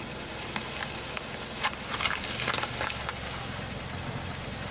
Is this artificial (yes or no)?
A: no